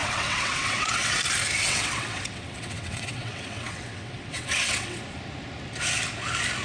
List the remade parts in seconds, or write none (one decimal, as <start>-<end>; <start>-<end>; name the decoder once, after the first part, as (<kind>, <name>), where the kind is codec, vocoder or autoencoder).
0.0-1.2 (vocoder, WaveNeXt); 1.6-5.0